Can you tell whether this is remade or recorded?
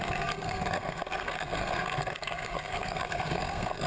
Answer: remade